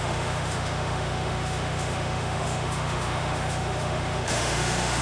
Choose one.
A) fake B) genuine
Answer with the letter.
A